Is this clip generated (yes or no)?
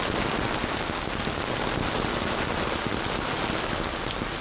no